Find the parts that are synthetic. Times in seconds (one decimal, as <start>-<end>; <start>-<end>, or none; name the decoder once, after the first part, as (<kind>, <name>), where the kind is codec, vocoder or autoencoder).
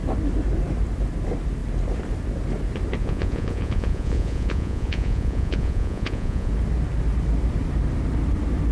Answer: 3.0-6.5 (vocoder, Vocos)